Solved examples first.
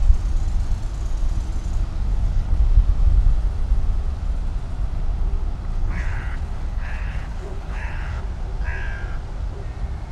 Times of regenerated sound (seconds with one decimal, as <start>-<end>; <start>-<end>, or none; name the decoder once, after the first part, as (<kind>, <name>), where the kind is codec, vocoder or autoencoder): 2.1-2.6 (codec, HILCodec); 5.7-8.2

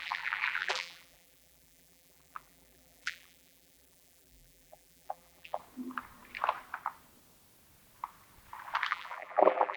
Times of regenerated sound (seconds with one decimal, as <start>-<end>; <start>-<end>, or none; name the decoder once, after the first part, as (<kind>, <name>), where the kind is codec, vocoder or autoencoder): 0.0-5.6 (vocoder, BigVGAN v2); 8.9-9.8

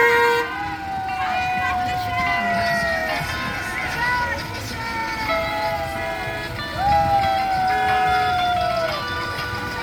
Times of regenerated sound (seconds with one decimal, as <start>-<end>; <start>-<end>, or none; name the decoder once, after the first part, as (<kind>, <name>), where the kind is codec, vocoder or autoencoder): none

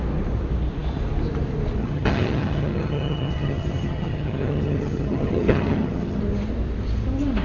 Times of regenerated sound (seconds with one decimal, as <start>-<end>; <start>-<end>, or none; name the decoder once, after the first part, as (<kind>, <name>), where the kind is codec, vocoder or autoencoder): 1.8-6.2 (vocoder, HiFi-GAN)

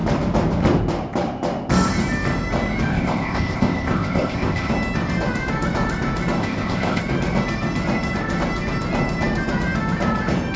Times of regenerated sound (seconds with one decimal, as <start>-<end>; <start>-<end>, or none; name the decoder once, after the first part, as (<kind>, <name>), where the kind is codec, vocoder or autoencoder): 2.9-4.7 (codec, ZipCodec); 6.4-7.0